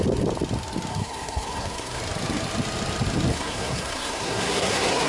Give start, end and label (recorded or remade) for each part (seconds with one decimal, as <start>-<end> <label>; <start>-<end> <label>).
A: 0.0-0.9 recorded; 0.9-2.0 remade; 2.0-3.3 recorded; 3.3-5.1 remade

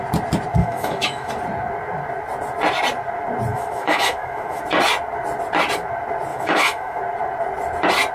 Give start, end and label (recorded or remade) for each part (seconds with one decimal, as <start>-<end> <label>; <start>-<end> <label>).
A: 0.0-0.6 recorded; 0.6-1.3 remade; 1.3-3.5 recorded; 3.5-4.6 remade; 4.6-6.3 recorded; 6.3-7.0 remade; 7.0-8.1 recorded

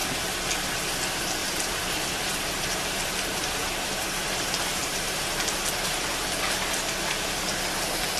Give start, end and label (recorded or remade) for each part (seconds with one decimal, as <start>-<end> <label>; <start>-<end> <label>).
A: 0.0-1.4 recorded; 1.4-5.0 remade; 5.0-8.2 recorded

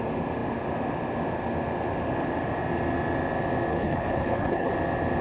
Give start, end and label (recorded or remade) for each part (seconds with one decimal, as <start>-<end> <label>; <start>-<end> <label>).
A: 0.0-3.7 recorded; 3.7-4.7 remade; 4.7-5.2 recorded

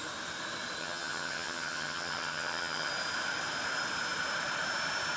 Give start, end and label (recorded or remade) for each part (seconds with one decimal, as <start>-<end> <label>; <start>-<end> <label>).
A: 0.0-0.8 recorded; 0.8-2.9 remade; 2.9-5.2 recorded